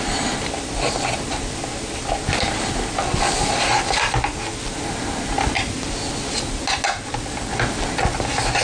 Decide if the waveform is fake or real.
real